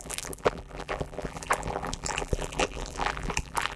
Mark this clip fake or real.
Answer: fake